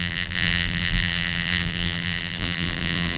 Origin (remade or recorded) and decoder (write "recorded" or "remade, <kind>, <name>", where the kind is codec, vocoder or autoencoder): remade, vocoder, BigVGAN v2